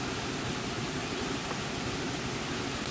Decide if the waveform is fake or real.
real